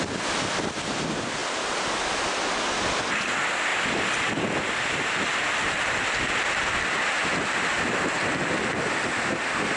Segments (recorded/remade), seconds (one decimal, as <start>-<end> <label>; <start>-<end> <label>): 0.0-9.8 recorded